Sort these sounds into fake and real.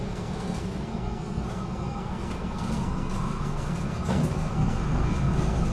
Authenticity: fake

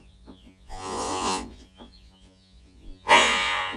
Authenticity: fake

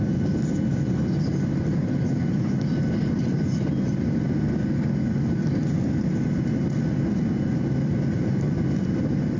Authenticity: real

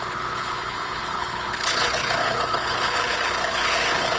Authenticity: fake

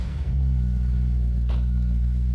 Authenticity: fake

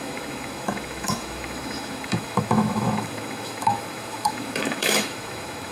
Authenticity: fake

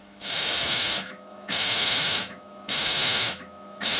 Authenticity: fake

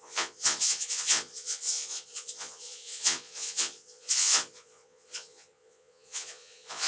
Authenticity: fake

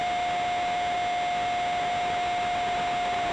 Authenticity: real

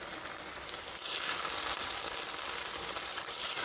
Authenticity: fake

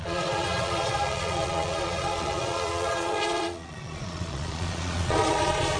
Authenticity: fake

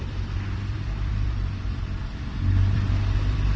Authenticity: fake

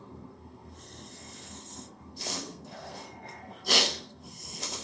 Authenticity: fake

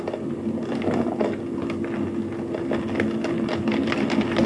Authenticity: real